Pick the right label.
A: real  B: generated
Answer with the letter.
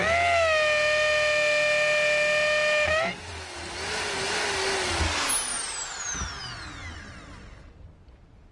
A